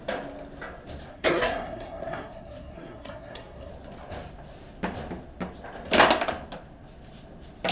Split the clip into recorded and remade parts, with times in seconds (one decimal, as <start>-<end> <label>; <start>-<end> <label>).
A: 0.0-1.1 recorded; 1.1-3.7 remade; 3.7-7.7 recorded